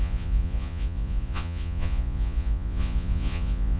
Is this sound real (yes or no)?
no